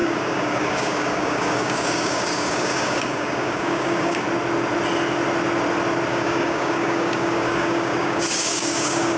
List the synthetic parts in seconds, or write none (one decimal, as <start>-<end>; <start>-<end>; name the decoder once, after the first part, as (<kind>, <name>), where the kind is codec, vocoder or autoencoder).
0.0-4.2 (codec, DAC); 6.1-9.2